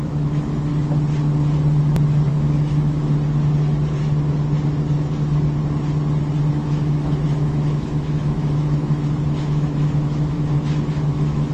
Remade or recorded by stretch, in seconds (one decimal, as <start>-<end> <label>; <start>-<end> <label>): 0.0-0.7 remade; 0.7-2.3 recorded; 2.3-3.0 remade; 3.0-6.5 recorded; 6.5-11.5 remade